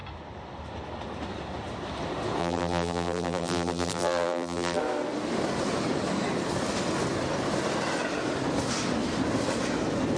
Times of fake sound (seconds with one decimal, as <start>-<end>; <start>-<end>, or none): 2.4-4.8